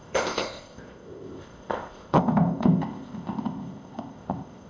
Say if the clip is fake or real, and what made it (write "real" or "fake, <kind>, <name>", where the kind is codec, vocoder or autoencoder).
fake, codec, ZipCodec